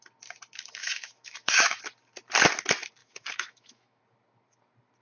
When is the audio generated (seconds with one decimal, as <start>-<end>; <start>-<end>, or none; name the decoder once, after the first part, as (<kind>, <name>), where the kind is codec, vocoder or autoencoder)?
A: 0.8-1.8 (autoencoder, DAC-VAE); 3.0-4.0